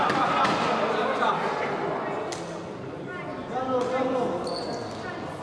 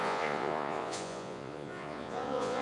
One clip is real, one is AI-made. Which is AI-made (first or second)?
second